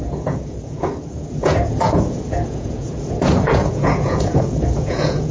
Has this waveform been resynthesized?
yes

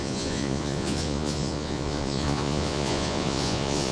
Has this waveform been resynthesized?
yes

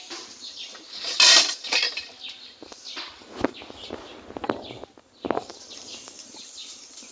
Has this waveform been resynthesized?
no